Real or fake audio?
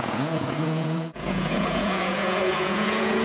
fake